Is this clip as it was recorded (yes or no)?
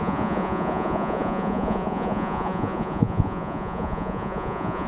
no